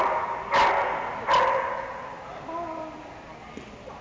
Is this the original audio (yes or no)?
yes